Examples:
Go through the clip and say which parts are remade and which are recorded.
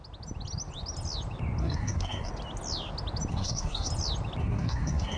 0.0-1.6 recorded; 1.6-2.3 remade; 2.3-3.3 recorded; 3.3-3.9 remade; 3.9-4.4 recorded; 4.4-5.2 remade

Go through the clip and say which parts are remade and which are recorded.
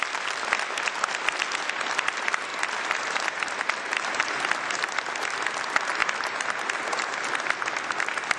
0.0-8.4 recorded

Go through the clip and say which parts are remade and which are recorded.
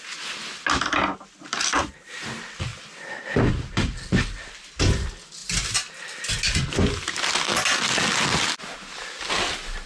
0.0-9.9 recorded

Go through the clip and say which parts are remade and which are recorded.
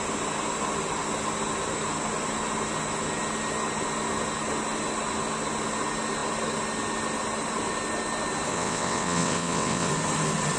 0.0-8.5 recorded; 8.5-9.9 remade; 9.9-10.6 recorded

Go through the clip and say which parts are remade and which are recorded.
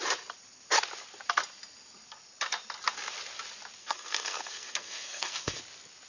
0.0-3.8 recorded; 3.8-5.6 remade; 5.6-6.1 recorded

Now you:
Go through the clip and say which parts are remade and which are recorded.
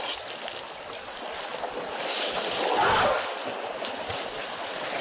0.0-5.0 recorded